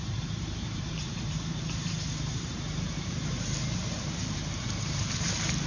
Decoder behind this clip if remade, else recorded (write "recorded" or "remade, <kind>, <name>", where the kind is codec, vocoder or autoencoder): remade, vocoder, BigVGAN v2